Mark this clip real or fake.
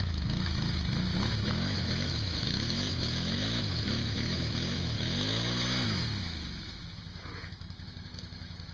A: fake